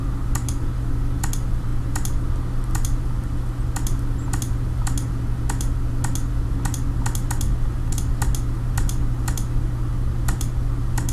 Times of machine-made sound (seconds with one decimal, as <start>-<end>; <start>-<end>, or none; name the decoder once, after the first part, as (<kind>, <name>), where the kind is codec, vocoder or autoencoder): none